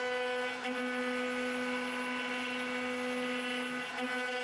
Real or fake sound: real